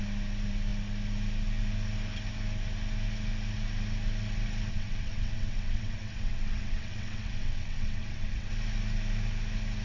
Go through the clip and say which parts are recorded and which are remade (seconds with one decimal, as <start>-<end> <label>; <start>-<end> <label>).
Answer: 0.0-4.7 recorded; 4.7-8.5 remade; 8.5-9.8 recorded